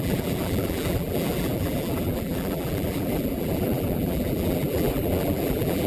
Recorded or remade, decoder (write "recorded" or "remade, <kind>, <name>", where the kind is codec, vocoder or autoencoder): remade, vocoder, BigVGAN v2